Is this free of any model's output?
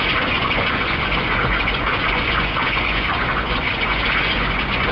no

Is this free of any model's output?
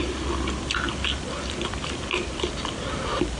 yes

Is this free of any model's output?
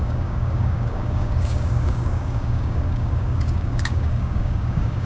no